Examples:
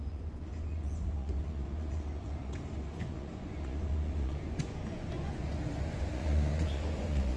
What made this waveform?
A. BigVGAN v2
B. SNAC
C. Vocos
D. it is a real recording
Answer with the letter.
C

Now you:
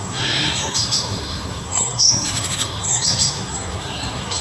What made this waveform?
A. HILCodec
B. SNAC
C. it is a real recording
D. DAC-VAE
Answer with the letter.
B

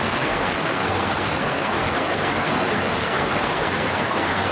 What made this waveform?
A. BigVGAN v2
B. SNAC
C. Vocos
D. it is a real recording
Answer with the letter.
B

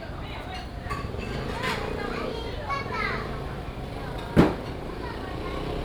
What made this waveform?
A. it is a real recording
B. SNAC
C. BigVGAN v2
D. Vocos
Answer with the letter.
A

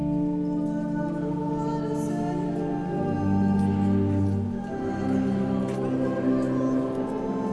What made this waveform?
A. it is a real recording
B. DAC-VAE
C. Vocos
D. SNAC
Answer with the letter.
A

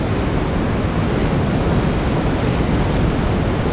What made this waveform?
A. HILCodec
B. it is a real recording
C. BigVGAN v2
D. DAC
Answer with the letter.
B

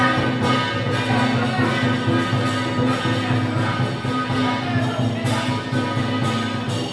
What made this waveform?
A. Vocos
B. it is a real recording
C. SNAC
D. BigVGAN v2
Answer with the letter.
B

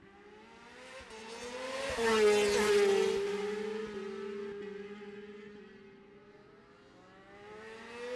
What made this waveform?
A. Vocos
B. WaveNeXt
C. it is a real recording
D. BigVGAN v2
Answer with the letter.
C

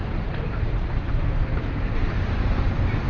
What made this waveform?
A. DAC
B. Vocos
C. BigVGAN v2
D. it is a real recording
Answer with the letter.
C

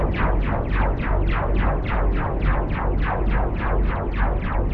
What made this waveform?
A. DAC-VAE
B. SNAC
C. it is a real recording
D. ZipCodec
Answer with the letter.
C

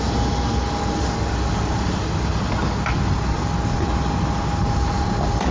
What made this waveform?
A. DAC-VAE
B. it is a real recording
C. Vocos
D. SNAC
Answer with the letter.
B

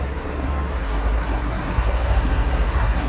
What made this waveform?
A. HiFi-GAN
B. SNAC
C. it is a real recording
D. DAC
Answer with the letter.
B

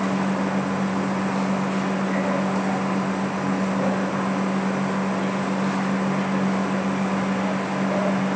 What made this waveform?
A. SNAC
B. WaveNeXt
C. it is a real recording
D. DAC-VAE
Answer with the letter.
C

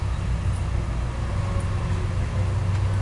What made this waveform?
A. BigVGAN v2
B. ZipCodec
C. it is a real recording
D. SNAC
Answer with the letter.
C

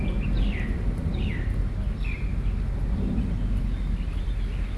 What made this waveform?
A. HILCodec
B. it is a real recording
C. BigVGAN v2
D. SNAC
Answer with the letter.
B